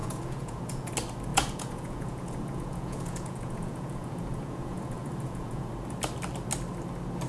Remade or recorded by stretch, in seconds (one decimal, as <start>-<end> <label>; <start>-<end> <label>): 0.0-0.9 remade; 0.9-1.3 recorded; 1.3-5.7 remade; 5.7-7.3 recorded